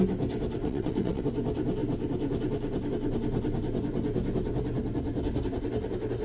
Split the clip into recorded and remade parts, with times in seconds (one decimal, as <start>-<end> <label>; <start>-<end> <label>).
0.0-0.6 recorded; 0.6-1.2 remade; 1.2-6.2 recorded

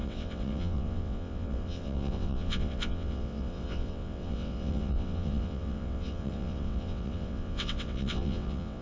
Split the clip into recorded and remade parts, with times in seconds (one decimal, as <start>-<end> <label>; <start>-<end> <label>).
0.0-8.8 remade

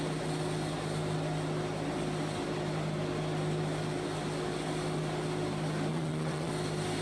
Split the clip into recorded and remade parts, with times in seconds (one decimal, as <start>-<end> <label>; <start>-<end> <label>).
0.0-5.9 recorded; 5.9-6.5 remade; 6.5-7.0 recorded

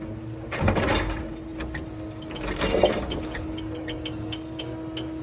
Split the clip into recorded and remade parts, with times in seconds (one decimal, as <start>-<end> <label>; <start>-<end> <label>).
0.0-5.2 recorded

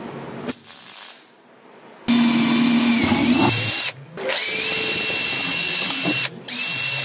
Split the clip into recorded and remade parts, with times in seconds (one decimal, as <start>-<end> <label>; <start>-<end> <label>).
0.0-7.0 recorded

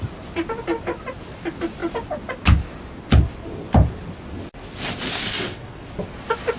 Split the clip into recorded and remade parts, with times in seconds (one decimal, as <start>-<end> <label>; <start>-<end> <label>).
0.0-5.3 recorded; 5.3-5.8 remade; 5.8-6.6 recorded

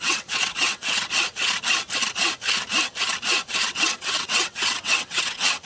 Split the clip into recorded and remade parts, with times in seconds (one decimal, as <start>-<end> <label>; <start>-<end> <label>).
0.0-1.0 remade; 1.0-3.7 recorded; 3.7-5.7 remade

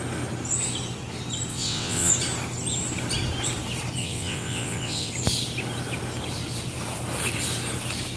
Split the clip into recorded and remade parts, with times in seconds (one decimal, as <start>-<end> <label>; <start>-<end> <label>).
0.0-1.5 recorded; 1.5-2.1 remade; 2.1-4.0 recorded; 4.0-5.1 remade; 5.1-8.2 recorded